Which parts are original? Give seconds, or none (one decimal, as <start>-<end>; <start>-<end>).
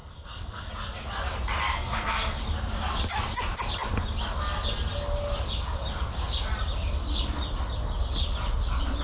0.7-1.7; 2.4-9.0